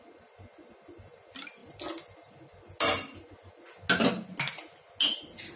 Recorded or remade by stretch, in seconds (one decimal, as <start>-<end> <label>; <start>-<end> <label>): 0.0-5.6 recorded